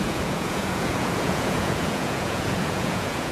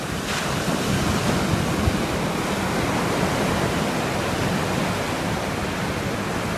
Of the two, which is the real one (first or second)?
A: second